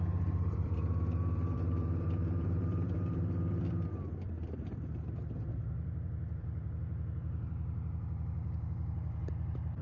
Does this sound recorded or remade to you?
remade